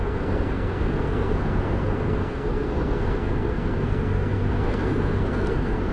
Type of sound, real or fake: fake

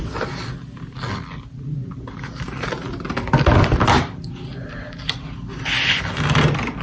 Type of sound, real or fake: real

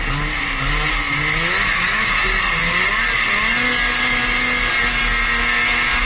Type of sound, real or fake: real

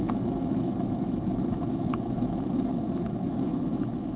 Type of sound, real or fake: fake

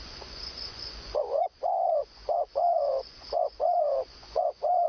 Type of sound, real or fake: fake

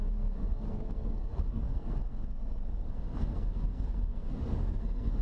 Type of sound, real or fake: fake